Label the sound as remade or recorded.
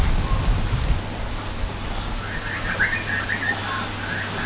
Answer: recorded